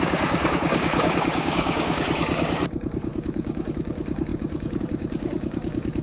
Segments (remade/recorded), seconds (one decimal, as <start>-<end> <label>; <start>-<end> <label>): 0.0-6.0 remade